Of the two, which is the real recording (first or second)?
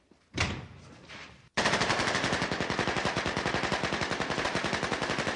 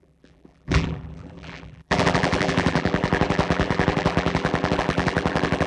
first